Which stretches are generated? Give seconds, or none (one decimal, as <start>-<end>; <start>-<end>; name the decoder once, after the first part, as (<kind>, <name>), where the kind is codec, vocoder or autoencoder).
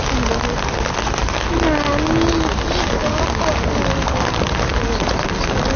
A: none